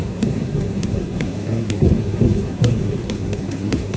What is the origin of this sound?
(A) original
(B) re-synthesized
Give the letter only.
B